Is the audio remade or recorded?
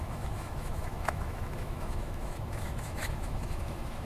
remade